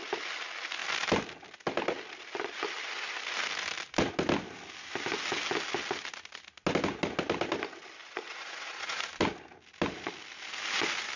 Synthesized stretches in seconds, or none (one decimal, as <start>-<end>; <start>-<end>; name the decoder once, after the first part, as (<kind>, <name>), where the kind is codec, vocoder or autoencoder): 8.0-9.1 (vocoder, Vocos)

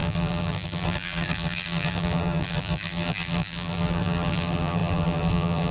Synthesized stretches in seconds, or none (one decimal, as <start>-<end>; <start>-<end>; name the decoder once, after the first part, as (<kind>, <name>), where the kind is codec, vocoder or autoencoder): 0.0-5.7 (vocoder, BigVGAN v2)